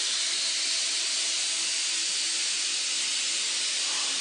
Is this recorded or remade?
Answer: recorded